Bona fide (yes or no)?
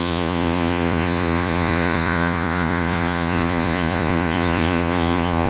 no